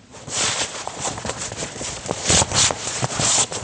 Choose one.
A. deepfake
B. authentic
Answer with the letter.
A